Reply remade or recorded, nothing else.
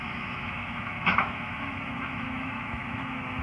remade